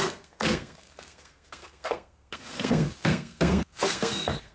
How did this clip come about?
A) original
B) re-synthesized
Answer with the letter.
B